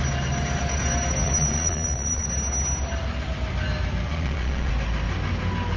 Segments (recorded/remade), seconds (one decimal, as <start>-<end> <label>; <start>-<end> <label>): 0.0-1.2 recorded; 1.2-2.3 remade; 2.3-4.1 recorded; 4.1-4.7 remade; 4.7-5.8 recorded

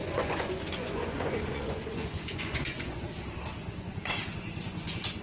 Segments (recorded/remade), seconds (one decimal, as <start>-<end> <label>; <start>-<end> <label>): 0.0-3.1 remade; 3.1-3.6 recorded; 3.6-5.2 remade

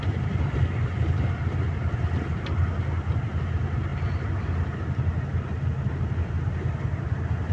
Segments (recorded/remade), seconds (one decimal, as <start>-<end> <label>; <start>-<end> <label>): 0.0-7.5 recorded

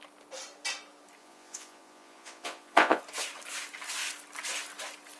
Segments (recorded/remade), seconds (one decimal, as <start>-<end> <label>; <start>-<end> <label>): 0.0-1.2 recorded; 1.2-3.0 remade; 3.0-5.2 recorded

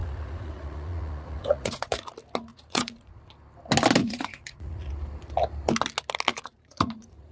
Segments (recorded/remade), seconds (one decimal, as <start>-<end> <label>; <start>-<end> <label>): 0.0-2.1 remade; 2.1-2.5 recorded; 2.5-3.2 remade; 3.2-4.0 recorded; 4.0-4.9 remade; 4.9-6.3 recorded; 6.3-7.3 remade

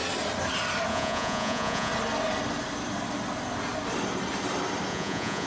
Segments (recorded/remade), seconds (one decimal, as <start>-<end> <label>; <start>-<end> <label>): 0.0-0.9 recorded; 0.9-1.9 remade; 1.9-4.9 recorded; 4.9-5.5 remade

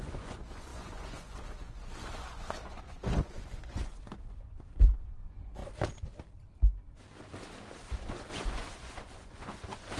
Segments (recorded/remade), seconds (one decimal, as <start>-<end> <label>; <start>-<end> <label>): 0.0-5.6 remade; 5.6-7.8 recorded; 7.8-10.0 remade

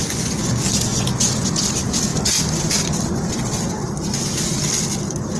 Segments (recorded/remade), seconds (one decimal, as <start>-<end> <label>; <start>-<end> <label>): 0.0-0.5 remade; 0.5-0.9 recorded; 0.9-1.6 remade; 1.6-5.4 recorded